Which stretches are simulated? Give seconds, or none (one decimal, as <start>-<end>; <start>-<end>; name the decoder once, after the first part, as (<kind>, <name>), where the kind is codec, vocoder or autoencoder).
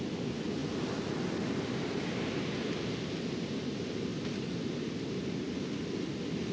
none